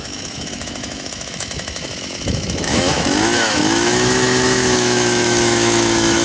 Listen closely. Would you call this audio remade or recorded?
remade